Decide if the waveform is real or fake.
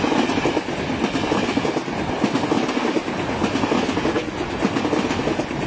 real